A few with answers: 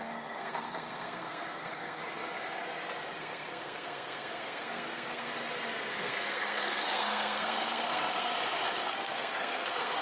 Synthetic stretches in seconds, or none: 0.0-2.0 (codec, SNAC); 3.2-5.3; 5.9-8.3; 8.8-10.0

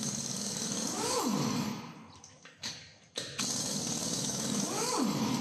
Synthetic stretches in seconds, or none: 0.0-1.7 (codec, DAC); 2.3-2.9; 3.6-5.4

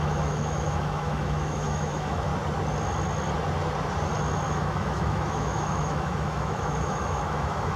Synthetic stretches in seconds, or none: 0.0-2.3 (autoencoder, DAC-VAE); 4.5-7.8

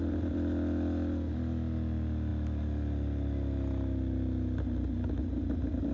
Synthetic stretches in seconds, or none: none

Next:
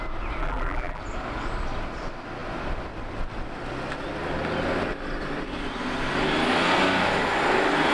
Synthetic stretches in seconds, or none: 0.4-1.0 (vocoder, BigVGAN v2)